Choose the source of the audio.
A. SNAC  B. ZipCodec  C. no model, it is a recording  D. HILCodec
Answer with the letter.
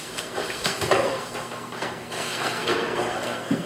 A